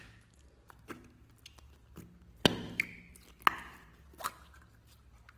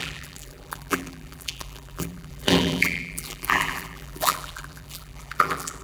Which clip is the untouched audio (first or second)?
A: first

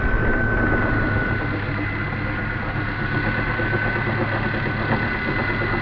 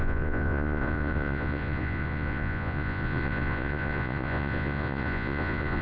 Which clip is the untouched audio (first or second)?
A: first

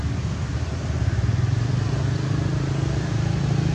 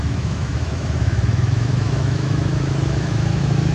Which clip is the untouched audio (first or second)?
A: first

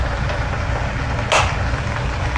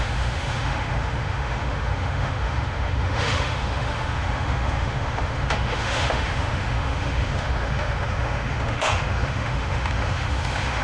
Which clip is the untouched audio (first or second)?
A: first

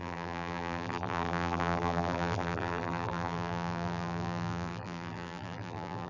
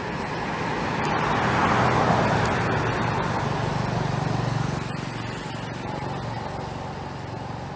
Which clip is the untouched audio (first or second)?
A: second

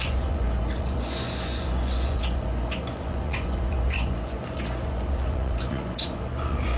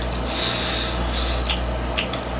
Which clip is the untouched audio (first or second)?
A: second